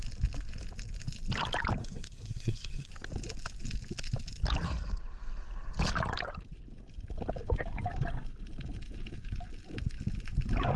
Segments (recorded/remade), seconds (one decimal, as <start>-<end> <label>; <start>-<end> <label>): 0.0-1.8 recorded; 1.8-2.9 remade; 2.9-10.8 recorded